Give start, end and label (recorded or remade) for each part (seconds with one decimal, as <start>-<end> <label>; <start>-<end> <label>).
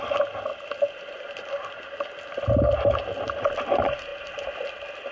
0.0-5.1 recorded